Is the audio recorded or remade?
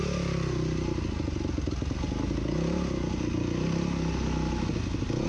recorded